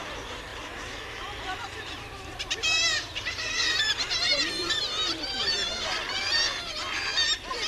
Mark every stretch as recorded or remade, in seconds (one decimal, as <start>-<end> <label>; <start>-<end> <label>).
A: 0.0-7.7 remade